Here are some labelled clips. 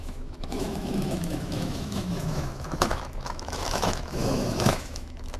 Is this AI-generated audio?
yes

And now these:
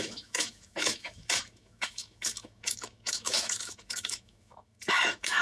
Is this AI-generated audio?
yes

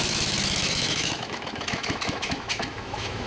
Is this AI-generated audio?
yes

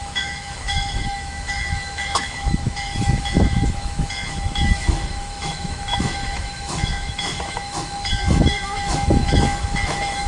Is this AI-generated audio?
yes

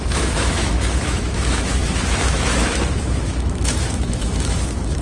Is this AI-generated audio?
yes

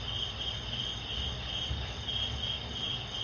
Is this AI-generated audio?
no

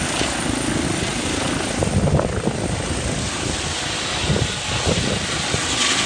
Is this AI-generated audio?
no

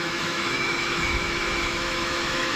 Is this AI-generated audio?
yes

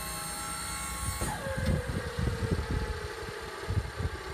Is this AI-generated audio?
no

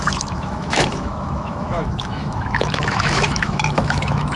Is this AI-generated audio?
yes